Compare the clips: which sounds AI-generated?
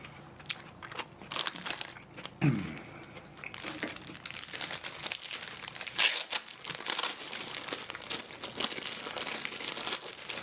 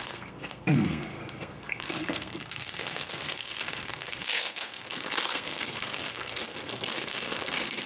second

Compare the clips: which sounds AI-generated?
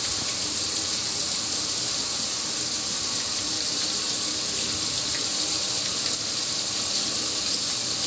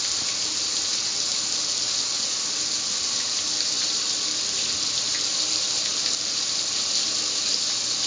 first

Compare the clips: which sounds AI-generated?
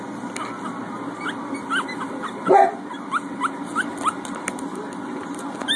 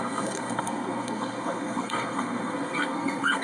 second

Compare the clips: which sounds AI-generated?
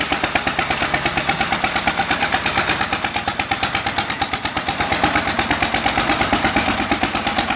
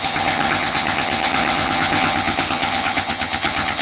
second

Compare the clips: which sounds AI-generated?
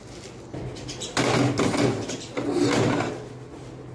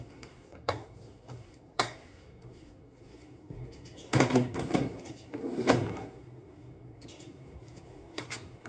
second